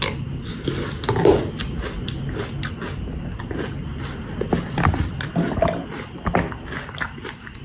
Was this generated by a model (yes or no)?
no